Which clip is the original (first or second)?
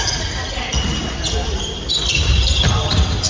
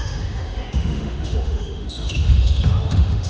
first